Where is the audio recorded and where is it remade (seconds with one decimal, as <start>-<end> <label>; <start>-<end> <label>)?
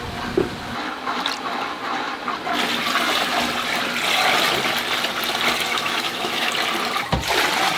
0.0-5.7 recorded; 5.7-6.5 remade; 6.5-7.8 recorded